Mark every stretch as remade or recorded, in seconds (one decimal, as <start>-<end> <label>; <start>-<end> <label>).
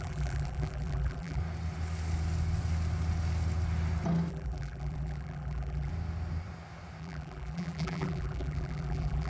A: 0.0-1.4 remade; 1.4-4.3 recorded; 4.3-5.9 remade; 5.9-7.0 recorded; 7.0-9.3 remade